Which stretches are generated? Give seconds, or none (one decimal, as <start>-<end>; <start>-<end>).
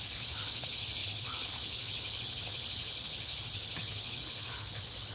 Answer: 0.0-5.1